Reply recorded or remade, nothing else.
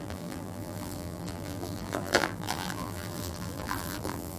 remade